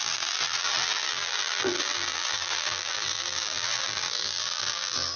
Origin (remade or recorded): remade